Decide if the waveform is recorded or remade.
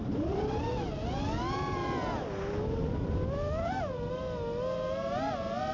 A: recorded